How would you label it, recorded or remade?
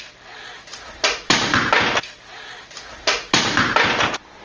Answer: recorded